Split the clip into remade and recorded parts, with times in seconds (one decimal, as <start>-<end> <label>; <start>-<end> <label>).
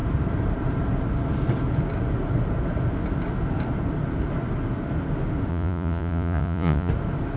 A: 0.0-5.5 recorded; 5.5-6.9 remade; 6.9-7.4 recorded